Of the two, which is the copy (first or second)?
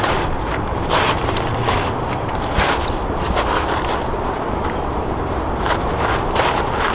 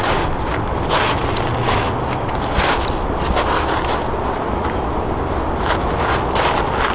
first